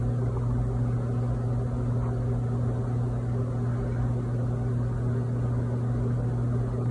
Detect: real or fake real